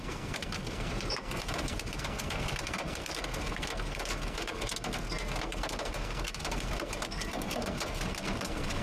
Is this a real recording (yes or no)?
no